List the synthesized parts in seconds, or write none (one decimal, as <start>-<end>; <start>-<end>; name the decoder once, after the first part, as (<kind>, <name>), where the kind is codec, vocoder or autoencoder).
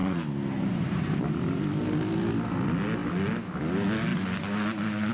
none